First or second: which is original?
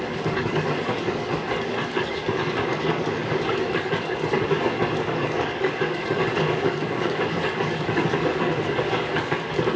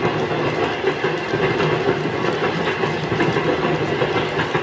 second